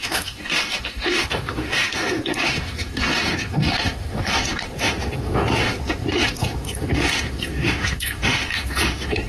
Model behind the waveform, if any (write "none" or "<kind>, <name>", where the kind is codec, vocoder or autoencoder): autoencoder, DAC-VAE